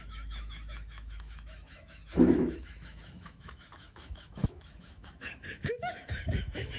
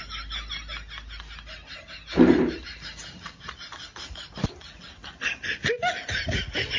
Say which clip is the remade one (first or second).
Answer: first